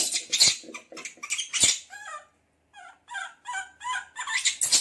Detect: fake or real real